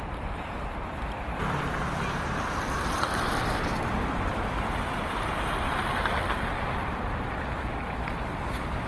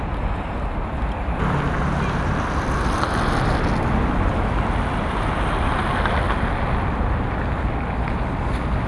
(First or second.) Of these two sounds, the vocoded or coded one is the first